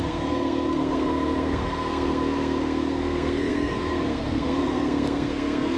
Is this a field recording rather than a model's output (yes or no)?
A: no